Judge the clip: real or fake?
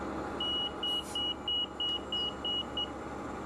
real